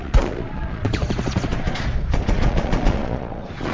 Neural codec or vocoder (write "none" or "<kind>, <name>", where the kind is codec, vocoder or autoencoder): vocoder, Vocos